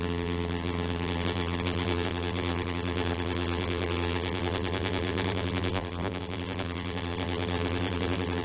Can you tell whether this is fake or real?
fake